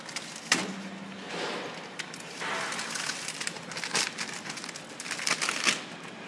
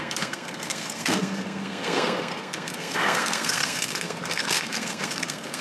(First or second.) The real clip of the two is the first